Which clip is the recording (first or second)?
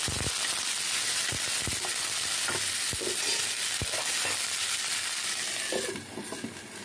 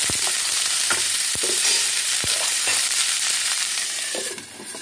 first